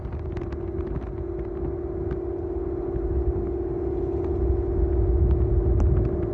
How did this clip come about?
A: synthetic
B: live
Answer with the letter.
B